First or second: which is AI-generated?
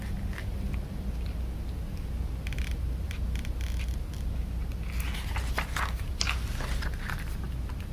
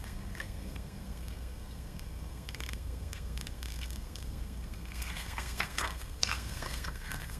second